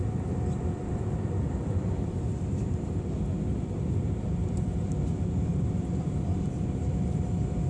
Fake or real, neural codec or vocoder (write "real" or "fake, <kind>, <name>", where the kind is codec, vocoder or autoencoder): fake, vocoder, BigVGAN v2